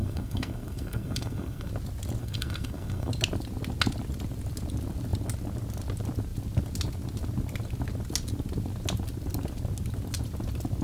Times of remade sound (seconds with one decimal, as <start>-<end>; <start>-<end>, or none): 0.0-1.7; 2.2-3.1